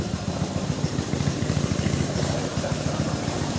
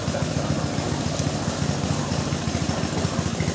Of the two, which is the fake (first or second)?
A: first